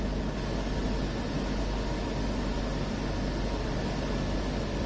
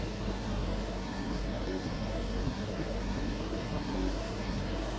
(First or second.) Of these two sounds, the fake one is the second